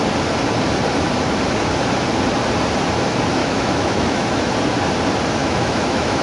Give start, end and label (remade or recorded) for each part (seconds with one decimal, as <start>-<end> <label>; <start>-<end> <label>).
0.0-3.4 recorded; 3.4-4.5 remade; 4.5-5.4 recorded; 5.4-6.2 remade